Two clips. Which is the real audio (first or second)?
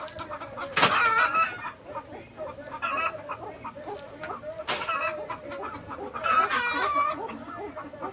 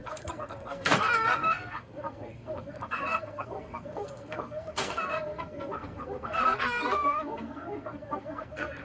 first